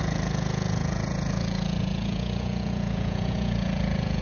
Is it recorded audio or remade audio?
remade